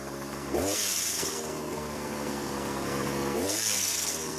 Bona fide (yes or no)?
no